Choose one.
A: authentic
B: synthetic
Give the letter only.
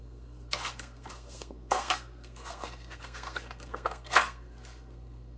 B